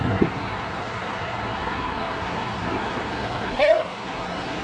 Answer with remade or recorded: remade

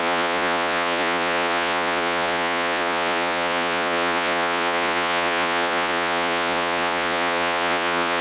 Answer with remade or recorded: remade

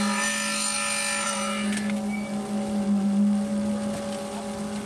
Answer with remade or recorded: recorded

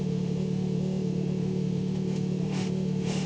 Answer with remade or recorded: remade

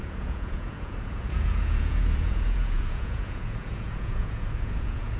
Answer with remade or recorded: remade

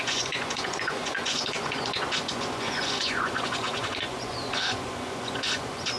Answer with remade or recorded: remade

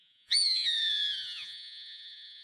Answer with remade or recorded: remade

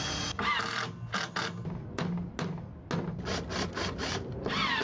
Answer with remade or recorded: recorded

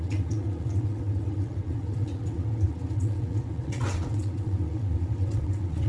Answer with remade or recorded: remade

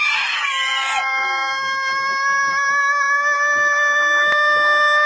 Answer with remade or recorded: recorded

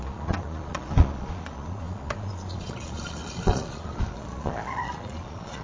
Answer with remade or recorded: remade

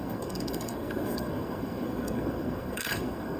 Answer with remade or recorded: remade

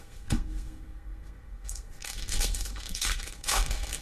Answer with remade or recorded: remade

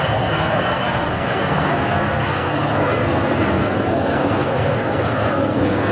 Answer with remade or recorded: remade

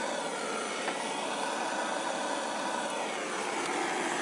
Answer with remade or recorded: recorded